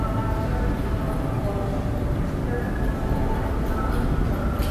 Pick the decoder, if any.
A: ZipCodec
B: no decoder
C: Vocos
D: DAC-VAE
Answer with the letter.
B